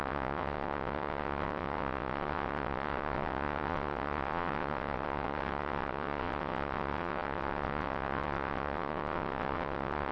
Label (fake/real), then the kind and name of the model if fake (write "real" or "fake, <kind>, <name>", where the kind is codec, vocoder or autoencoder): fake, vocoder, WaveNeXt